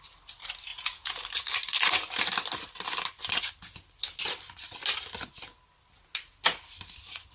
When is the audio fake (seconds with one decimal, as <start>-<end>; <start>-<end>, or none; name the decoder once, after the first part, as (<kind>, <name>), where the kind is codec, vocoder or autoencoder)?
0.7-1.2 (vocoder, Vocos)